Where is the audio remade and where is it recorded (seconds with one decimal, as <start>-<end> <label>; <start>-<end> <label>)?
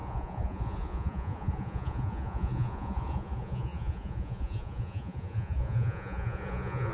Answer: 0.0-6.9 remade